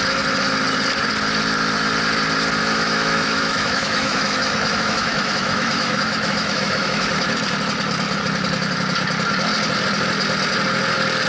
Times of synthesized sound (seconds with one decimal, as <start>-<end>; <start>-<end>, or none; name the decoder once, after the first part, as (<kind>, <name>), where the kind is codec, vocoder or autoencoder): 2.6-7.1 (autoencoder, DAC-VAE)